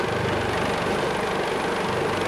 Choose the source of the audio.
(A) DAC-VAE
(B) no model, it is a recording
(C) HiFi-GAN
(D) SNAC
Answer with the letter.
B